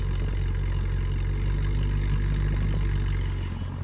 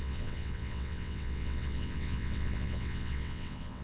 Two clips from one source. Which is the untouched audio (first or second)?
first